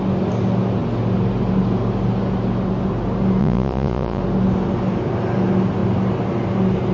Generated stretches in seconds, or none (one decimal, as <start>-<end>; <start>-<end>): 3.4-4.2